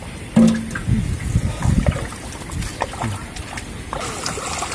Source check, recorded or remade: recorded